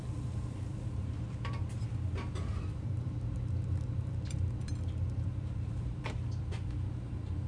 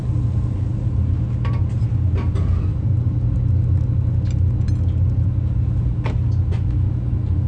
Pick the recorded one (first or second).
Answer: second